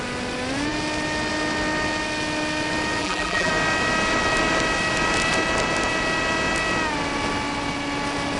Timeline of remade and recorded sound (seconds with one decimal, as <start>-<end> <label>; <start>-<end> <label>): 0.0-3.0 recorded; 3.0-3.5 remade; 3.5-8.4 recorded